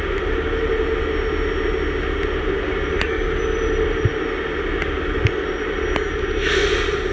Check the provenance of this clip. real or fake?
real